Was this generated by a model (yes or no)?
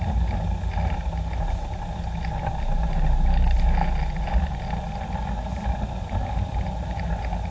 no